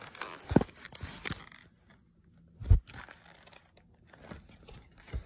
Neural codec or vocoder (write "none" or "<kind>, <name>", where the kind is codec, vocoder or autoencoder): none